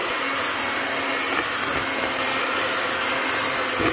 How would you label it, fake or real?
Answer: real